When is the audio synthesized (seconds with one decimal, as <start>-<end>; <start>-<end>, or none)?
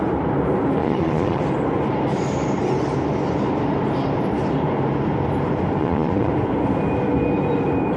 0.8-1.4; 5.8-6.3